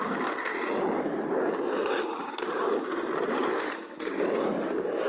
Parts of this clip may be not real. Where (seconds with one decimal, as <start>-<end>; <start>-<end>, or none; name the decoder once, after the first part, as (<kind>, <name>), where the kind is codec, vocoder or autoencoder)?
0.5-3.6 (vocoder, BigVGAN v2)